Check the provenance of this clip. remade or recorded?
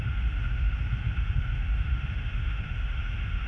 remade